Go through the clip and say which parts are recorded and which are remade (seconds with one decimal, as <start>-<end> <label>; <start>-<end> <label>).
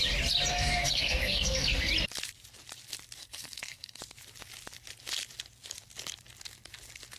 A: 0.0-0.5 recorded; 0.5-1.9 remade; 1.9-3.2 recorded; 3.2-4.0 remade; 4.0-7.2 recorded